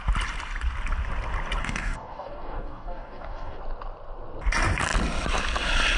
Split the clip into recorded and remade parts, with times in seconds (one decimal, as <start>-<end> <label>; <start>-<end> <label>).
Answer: 0.0-1.6 recorded; 1.6-3.6 remade; 3.6-6.0 recorded